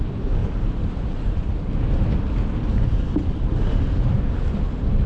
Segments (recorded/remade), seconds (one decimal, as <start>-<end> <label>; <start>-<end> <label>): 0.0-0.4 recorded; 0.4-1.5 remade; 1.5-5.1 recorded